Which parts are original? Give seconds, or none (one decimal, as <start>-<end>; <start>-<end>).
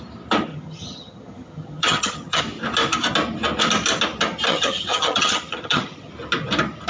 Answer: 0.0-0.5; 2.4-4.5; 6.1-6.9